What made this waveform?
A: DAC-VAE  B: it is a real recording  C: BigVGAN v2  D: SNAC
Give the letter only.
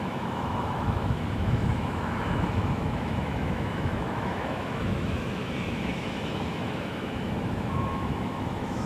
A